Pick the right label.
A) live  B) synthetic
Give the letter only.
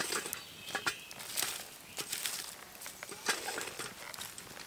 A